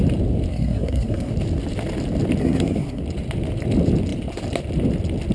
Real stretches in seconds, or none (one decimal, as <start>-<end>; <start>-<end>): 0.0-0.5; 1.3-2.4; 3.0-5.3